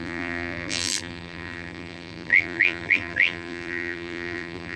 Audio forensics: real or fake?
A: fake